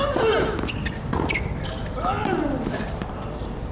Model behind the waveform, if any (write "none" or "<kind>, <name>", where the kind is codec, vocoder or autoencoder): none